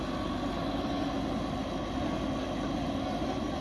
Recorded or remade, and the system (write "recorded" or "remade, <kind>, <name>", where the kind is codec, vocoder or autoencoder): recorded